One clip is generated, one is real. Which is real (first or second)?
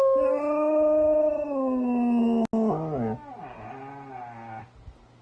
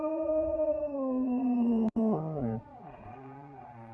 first